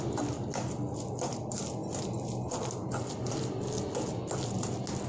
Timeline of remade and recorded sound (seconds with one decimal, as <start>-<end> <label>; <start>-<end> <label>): 0.0-5.1 recorded